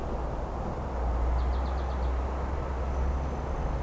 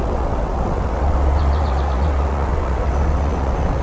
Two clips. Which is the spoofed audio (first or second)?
second